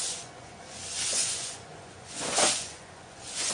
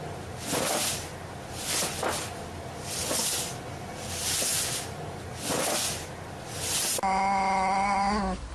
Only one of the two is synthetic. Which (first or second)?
first